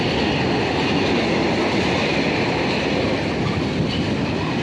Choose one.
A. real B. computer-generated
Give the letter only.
A